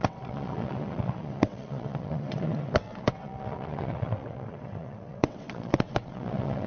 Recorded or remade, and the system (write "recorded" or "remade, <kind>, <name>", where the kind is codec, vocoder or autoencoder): remade, vocoder, WaveNeXt